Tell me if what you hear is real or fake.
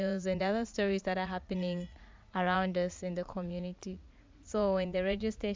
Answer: fake